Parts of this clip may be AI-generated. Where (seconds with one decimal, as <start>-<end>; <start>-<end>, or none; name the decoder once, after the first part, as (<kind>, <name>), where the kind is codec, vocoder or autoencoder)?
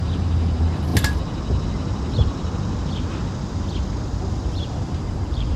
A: 0.0-0.9 (vocoder, BigVGAN v2); 4.3-5.6